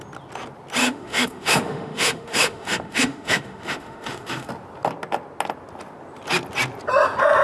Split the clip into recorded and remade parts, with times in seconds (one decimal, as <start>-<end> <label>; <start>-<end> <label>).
0.0-0.8 recorded; 0.8-4.5 remade; 4.5-7.4 recorded